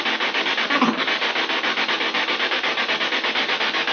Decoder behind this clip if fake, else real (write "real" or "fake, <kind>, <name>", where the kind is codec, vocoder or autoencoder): real